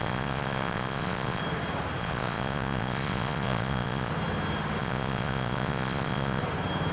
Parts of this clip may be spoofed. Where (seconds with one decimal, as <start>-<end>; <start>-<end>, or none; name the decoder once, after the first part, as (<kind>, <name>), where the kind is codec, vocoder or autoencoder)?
0.0-1.4 (vocoder, Vocos); 2.0-4.1; 4.8-6.4